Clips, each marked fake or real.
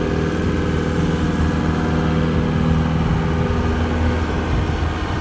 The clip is real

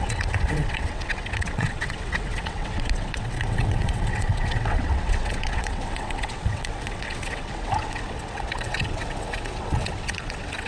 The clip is fake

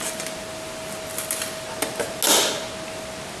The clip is real